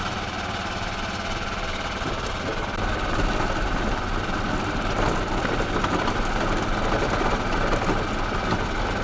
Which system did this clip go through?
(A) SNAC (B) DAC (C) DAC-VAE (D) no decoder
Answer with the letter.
D